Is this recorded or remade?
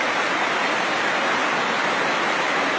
recorded